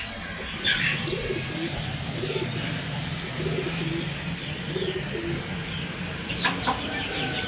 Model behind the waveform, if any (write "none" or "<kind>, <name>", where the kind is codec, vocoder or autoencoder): none